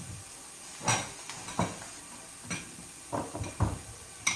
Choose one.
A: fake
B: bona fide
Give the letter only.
B